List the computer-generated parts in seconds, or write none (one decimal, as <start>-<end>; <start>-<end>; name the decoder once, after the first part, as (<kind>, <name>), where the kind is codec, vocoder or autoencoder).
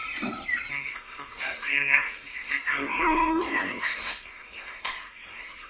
0.7-5.7 (codec, SNAC)